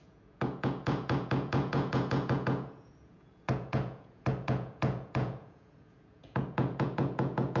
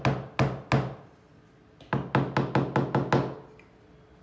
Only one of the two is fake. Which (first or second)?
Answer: first